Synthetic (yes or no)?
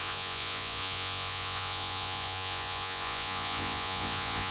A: yes